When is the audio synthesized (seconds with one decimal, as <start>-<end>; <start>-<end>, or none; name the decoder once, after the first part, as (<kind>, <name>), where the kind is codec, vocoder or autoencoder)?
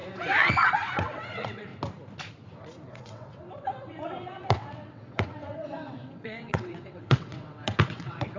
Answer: 0.0-1.7 (vocoder, WaveNeXt); 2.9-8.4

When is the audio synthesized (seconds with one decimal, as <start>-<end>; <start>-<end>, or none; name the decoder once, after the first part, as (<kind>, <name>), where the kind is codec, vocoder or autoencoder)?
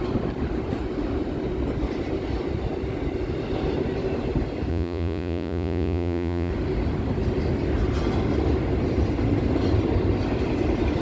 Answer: 4.7-6.5 (vocoder, Vocos)